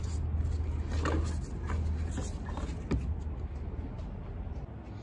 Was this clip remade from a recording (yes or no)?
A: no